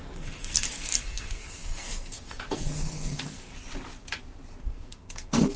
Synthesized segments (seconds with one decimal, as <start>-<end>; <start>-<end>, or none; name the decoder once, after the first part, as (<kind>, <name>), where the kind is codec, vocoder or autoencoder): 0.0-3.5 (codec, SNAC); 4.6-5.6